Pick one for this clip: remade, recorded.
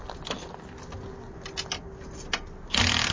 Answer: recorded